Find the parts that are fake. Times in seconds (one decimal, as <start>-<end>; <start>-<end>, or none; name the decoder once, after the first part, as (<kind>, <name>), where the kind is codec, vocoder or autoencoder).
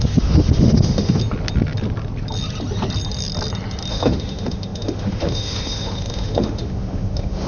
0.0-1.2 (autoencoder, DAC-VAE); 3.9-7.5